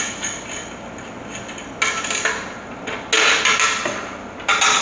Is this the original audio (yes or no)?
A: yes